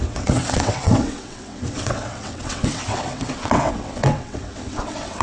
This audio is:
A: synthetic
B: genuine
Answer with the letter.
A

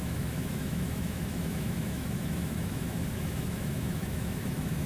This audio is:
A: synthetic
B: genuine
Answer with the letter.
A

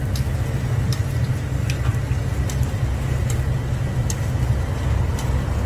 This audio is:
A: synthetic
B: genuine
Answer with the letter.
B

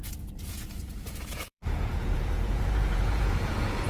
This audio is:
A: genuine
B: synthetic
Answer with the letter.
B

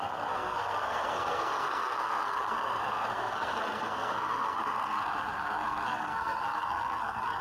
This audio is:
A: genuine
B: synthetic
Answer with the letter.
B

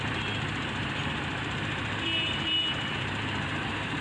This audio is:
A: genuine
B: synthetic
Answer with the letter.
B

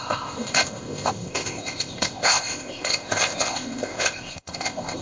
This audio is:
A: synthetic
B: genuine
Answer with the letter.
A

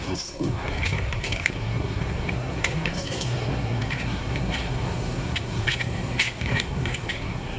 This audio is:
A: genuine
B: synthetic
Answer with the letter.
B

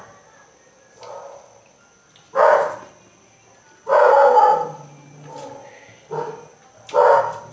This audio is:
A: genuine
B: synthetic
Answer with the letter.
A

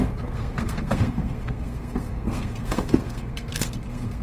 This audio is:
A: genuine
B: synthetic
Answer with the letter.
B